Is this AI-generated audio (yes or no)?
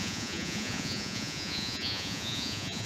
yes